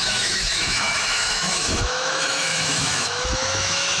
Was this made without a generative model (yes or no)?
no